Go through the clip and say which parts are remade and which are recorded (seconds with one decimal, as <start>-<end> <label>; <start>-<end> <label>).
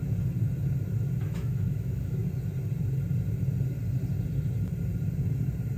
0.0-1.2 recorded; 1.2-2.2 remade; 2.2-5.8 recorded